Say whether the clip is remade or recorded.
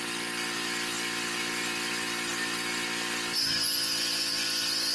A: recorded